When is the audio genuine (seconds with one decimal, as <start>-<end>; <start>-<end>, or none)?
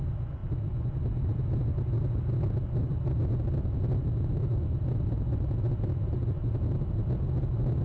0.0-7.8